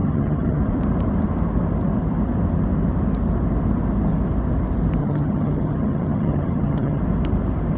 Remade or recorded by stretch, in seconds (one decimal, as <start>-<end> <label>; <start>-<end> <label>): 0.0-0.6 remade; 0.6-5.0 recorded; 5.0-7.0 remade; 7.0-7.8 recorded